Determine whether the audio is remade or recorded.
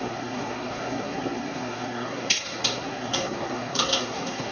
remade